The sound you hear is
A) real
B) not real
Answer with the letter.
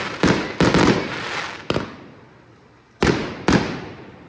A